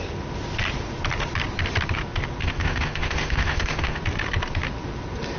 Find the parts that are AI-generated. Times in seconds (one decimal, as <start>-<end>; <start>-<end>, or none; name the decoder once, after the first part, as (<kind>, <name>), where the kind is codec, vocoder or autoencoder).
2.4-4.0 (autoencoder, DAC-VAE)